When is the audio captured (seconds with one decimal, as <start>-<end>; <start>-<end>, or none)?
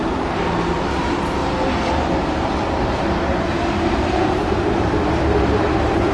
none